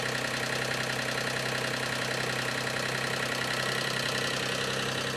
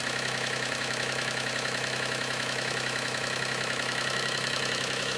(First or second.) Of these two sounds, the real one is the first